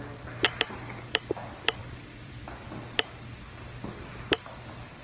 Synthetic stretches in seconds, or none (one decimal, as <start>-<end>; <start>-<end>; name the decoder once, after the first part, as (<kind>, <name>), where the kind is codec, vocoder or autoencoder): 1.8-2.3 (vocoder, BigVGAN v2)